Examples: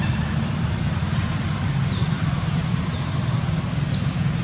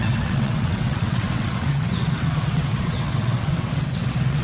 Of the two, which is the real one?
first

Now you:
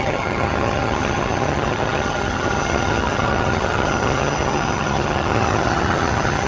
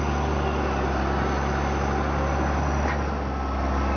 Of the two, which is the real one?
second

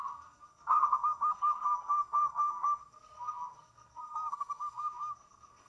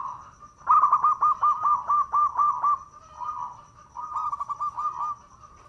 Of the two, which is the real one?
second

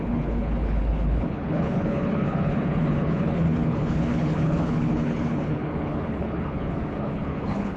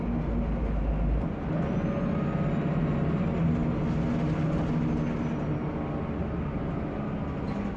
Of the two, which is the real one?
second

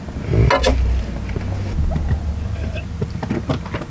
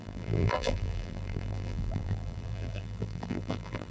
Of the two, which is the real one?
first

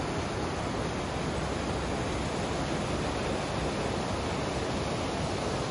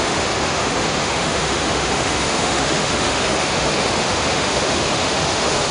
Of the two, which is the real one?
first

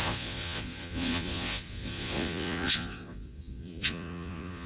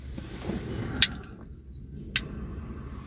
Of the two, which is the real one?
second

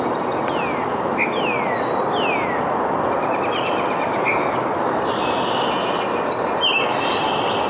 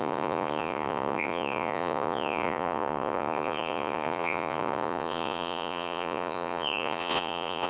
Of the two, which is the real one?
first